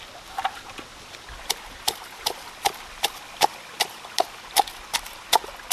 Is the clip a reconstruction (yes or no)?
no